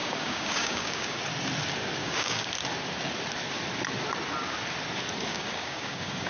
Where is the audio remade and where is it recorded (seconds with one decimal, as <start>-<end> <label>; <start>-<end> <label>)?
0.0-1.2 remade; 1.2-2.0 recorded; 2.0-2.5 remade; 2.5-5.3 recorded; 5.3-6.3 remade

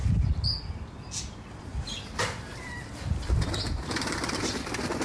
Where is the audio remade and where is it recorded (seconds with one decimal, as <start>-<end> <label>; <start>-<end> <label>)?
0.0-0.6 remade; 0.6-1.7 recorded; 1.7-5.0 remade